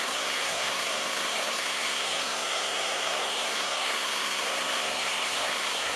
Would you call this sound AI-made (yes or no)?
yes